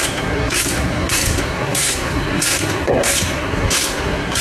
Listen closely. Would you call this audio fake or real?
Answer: fake